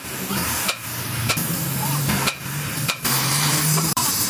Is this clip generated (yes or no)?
yes